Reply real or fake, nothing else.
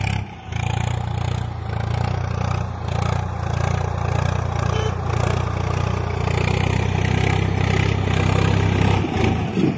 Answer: real